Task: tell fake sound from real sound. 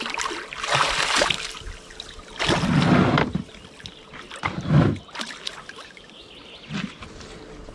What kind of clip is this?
real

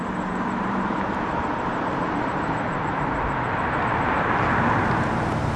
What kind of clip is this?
fake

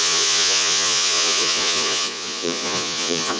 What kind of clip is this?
fake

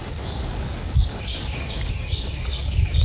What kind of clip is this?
fake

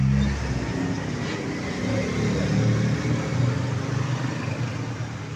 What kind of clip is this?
real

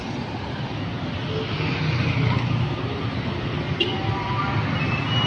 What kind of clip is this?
real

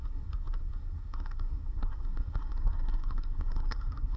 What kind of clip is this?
fake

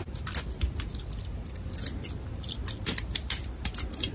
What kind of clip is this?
real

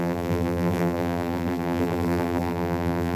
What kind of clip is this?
fake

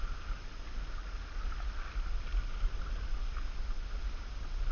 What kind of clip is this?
real